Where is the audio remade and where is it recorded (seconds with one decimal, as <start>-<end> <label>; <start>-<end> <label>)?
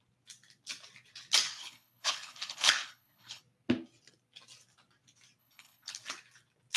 0.0-1.5 recorded; 1.5-3.4 remade; 3.4-5.4 recorded; 5.4-6.0 remade; 6.0-6.8 recorded